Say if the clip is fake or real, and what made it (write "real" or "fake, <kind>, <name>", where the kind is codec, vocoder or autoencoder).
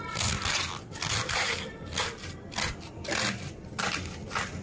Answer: real